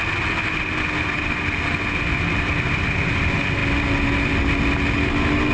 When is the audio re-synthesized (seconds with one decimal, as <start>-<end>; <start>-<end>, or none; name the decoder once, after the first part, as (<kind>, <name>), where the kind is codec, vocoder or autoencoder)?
none